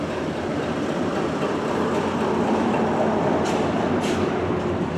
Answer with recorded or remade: recorded